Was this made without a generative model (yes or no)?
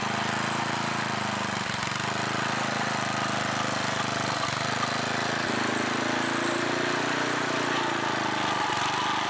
yes